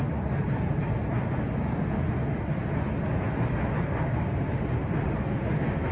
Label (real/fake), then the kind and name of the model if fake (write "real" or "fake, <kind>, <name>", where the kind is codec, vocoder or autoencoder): real